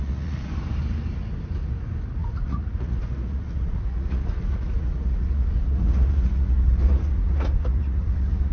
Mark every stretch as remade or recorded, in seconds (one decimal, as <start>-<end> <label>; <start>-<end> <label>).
0.0-0.5 remade; 0.5-2.0 recorded; 2.0-8.5 remade